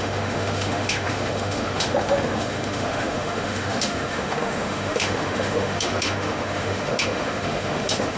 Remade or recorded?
remade